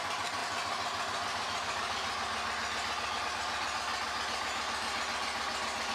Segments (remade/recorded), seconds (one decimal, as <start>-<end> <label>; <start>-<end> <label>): 0.0-5.9 recorded

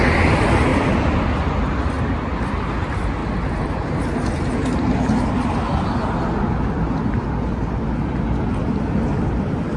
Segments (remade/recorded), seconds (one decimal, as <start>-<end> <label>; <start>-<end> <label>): 0.0-9.8 recorded